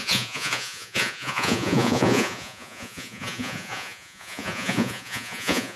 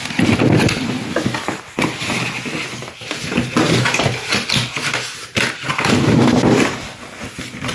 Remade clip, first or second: first